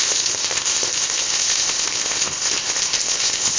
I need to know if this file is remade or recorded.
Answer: remade